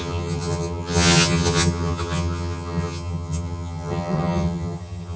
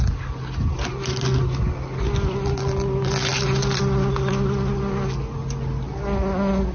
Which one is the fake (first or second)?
first